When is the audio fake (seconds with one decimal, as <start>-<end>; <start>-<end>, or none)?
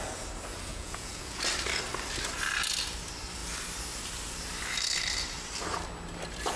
0.7-1.4